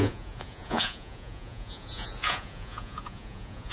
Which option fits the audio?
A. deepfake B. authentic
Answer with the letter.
A